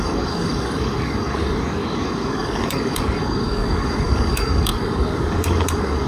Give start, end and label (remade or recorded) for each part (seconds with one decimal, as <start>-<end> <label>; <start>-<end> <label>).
0.0-6.1 remade